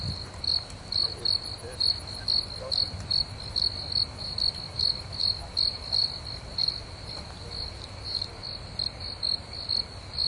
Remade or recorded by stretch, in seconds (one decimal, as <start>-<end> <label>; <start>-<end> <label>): 0.0-10.3 recorded